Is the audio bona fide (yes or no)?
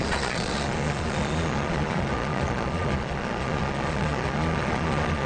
no